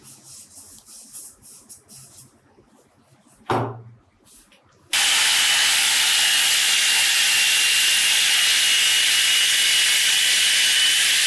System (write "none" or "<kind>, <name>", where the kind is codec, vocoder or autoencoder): none